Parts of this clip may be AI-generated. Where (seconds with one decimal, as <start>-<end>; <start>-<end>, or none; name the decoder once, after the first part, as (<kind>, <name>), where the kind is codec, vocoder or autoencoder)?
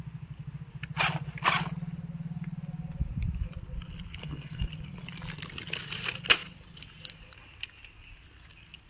4.2-4.7 (codec, SNAC)